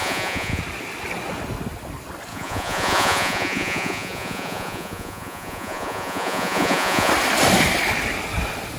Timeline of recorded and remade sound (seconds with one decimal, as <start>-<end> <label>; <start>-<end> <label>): 0.0-0.6 remade; 0.6-2.3 recorded; 2.3-7.1 remade; 7.1-8.8 recorded